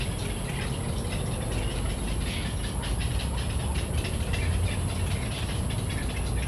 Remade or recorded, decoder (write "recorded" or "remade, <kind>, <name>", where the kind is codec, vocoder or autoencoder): recorded